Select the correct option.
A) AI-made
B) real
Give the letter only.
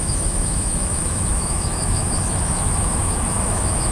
A